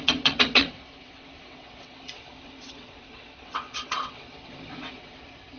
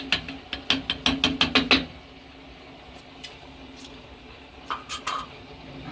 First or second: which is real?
second